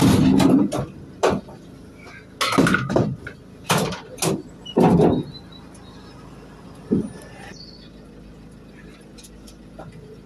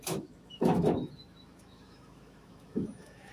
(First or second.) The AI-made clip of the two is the second